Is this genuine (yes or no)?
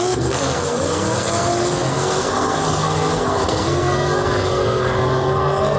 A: no